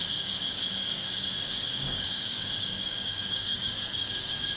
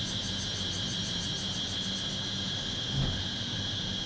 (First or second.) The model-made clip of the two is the first